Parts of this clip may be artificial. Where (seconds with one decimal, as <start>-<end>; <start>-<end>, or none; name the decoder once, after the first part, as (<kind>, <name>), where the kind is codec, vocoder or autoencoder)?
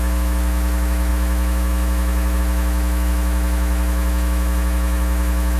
0.0-5.6 (autoencoder, DAC-VAE)